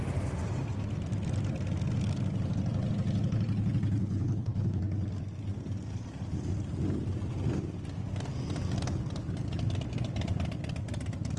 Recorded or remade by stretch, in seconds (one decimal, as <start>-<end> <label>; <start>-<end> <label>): 0.0-4.0 recorded; 4.0-4.8 remade; 4.8-11.4 recorded